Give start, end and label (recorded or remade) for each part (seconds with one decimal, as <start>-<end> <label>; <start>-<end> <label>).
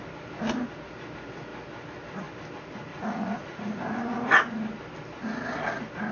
0.0-2.9 recorded; 2.9-3.8 remade; 3.8-6.1 recorded